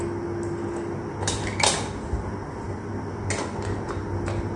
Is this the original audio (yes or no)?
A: yes